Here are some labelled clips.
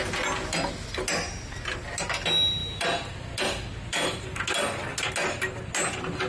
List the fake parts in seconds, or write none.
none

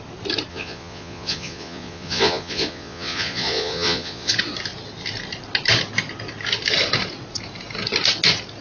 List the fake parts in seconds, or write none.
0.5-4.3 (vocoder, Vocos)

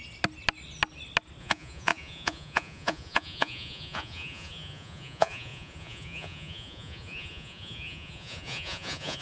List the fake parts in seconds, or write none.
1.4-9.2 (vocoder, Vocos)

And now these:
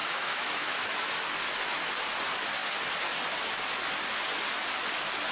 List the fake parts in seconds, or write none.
0.0-1.1 (autoencoder, DAC-VAE)

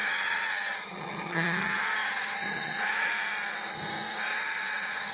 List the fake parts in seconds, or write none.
0.0-3.1 (vocoder, HiFi-GAN); 4.3-5.1